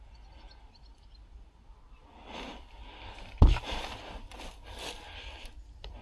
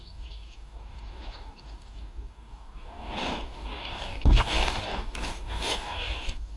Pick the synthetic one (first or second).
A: second